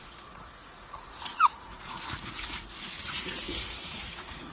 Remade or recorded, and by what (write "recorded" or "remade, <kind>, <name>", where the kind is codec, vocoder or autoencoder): remade, vocoder, Vocos